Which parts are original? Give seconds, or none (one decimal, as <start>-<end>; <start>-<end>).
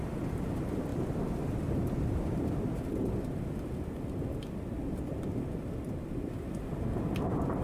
0.0-0.9; 3.0-7.6